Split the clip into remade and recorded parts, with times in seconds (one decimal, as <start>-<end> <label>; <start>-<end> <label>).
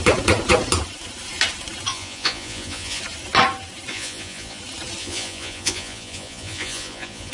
0.0-1.9 recorded; 1.9-3.0 remade; 3.0-3.9 recorded; 3.9-4.6 remade; 4.6-5.0 recorded; 5.0-7.3 remade